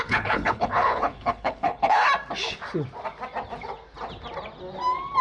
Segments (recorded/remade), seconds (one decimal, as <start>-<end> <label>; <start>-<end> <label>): 0.0-2.1 remade; 2.1-5.2 recorded